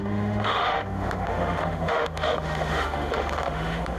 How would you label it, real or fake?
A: fake